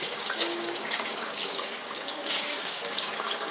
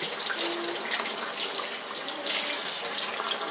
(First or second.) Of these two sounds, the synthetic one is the first